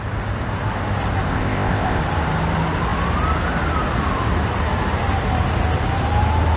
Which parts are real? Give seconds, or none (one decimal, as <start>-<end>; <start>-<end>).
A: 0.0-1.3; 2.0-6.6

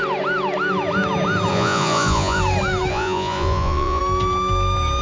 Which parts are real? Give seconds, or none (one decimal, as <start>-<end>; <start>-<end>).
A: 0.0-1.5; 2.4-2.9; 4.0-5.0

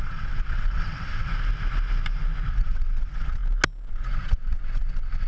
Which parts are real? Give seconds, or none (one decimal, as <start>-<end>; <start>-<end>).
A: 1.3-2.5; 3.4-3.9

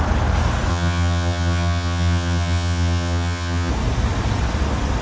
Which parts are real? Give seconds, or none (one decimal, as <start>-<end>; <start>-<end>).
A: 0.0-0.7; 3.7-5.0

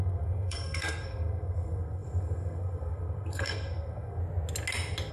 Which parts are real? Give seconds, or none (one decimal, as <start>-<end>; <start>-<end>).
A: 4.2-5.1

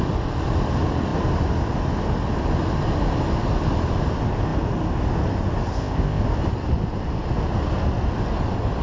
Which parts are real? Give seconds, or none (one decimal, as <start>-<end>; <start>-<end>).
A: 0.0-5.7; 6.2-8.8

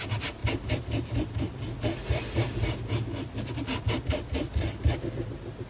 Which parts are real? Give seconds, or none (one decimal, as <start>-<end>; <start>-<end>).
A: 0.0-5.7